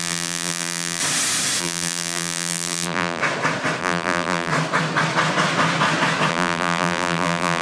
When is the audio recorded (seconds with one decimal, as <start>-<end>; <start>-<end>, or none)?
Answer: 1.0-1.6; 3.2-3.8; 4.5-6.3